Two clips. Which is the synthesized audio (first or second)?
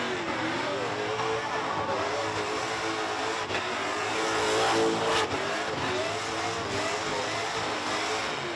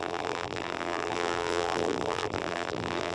second